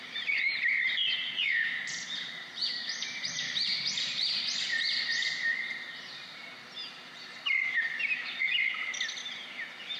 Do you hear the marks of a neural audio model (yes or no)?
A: yes